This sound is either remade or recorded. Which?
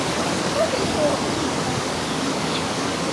remade